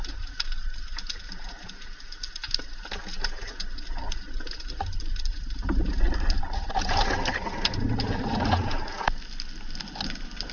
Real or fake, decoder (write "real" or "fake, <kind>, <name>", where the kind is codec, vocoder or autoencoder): real